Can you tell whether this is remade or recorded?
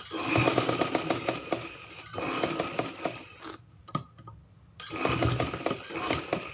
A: recorded